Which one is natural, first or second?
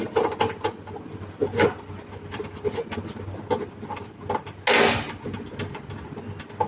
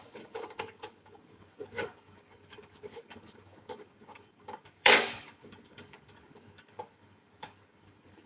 first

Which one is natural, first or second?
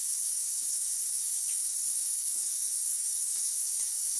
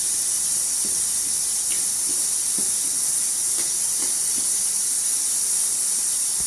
second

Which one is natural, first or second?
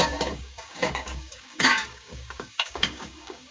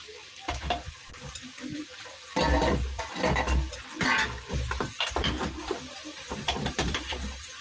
second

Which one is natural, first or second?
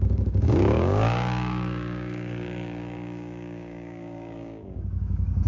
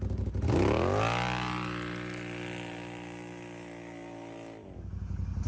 second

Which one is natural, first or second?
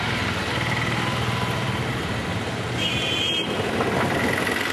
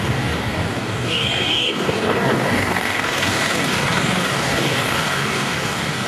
first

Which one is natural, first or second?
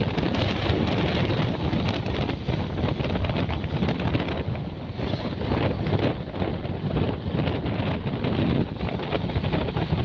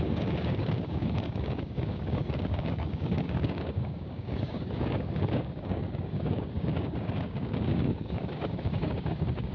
first